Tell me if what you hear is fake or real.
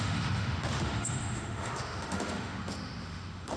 fake